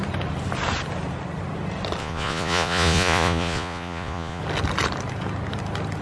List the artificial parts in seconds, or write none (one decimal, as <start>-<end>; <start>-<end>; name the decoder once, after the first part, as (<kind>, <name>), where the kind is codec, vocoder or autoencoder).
2.0-4.4 (vocoder, Vocos)